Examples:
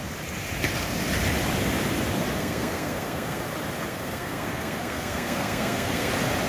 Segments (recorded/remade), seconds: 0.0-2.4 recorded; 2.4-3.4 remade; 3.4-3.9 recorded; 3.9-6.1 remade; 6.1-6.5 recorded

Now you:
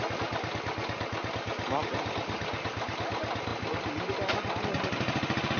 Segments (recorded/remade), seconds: 0.0-5.6 recorded

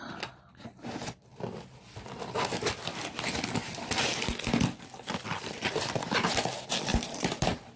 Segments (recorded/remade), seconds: 0.0-6.9 recorded; 6.9-7.8 remade

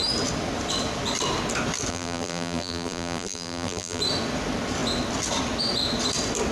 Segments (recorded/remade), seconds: 0.0-1.9 recorded; 1.9-4.0 remade; 4.0-6.5 recorded

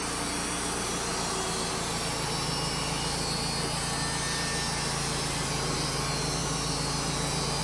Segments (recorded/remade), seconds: 0.0-7.6 recorded

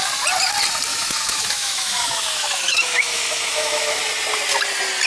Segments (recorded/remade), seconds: 0.0-0.9 recorded; 0.9-4.0 remade; 4.0-5.1 recorded

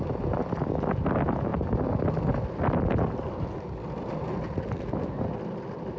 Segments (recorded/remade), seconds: 0.0-6.0 recorded

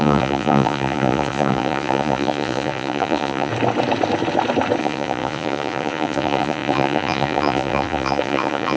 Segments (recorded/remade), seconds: 0.0-3.5 remade; 3.5-4.8 recorded; 4.8-8.8 remade